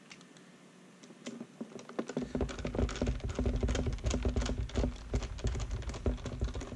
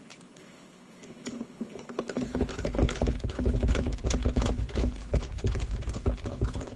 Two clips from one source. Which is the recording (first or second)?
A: first